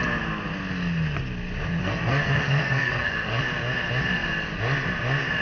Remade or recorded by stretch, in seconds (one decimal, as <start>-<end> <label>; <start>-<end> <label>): 0.0-1.8 recorded; 1.8-3.4 remade; 3.4-5.4 recorded